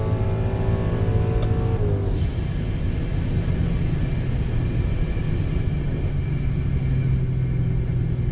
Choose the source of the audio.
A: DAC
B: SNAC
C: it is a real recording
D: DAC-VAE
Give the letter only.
C